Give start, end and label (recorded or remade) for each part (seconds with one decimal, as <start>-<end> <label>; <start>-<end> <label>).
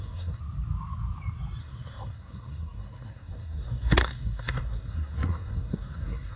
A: 0.0-0.4 remade; 0.4-1.6 recorded; 1.6-6.4 remade